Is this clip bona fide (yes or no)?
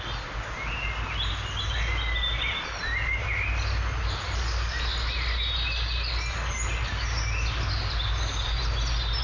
yes